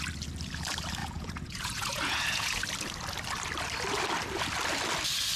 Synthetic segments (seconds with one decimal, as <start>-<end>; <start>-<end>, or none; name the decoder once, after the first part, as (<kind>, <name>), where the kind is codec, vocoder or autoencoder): 1.0-2.6 (vocoder, Vocos)